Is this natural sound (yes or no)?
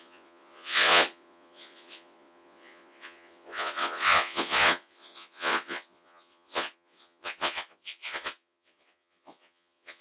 no